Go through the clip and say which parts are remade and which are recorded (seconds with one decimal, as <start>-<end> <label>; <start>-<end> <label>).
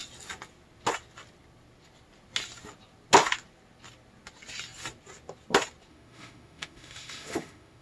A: 0.0-5.9 recorded; 5.9-7.8 remade